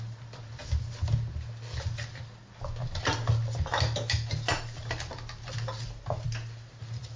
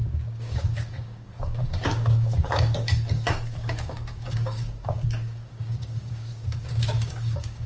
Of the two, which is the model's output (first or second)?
second